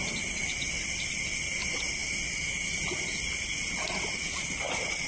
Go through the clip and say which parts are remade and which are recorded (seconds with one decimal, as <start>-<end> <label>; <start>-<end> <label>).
0.0-5.1 recorded